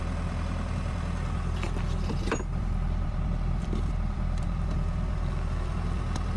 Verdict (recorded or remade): remade